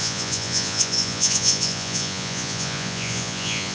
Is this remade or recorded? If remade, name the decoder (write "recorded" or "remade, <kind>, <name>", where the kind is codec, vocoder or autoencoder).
remade, vocoder, Vocos